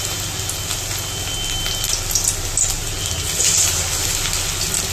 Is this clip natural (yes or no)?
yes